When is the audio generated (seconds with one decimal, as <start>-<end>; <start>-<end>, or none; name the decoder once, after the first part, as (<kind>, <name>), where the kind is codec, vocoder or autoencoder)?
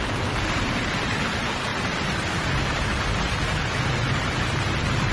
none